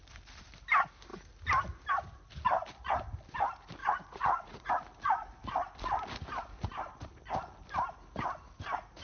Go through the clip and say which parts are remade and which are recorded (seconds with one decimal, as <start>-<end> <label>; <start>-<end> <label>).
0.0-3.8 recorded; 3.8-4.7 remade; 4.7-9.0 recorded